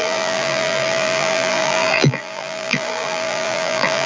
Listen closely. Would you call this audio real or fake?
fake